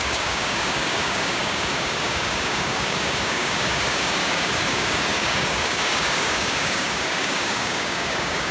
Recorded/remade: remade